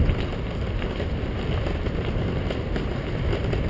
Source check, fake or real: real